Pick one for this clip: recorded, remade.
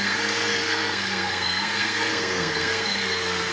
remade